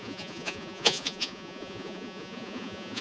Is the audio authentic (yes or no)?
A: no